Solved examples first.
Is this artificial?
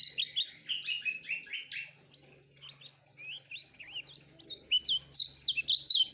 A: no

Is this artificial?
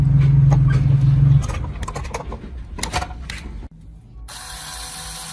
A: no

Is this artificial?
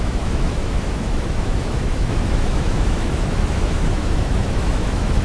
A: yes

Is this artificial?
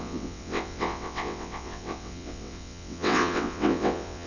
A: yes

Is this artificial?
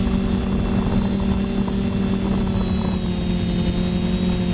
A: no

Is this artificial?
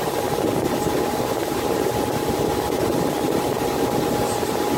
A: yes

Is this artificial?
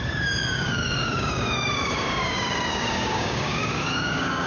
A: yes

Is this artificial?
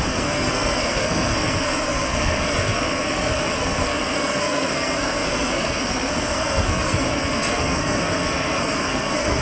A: yes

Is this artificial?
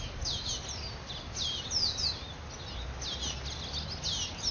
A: no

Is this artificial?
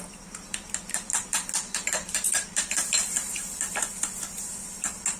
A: no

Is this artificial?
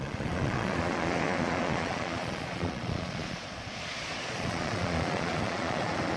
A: yes